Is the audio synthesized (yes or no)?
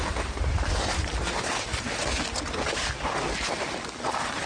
no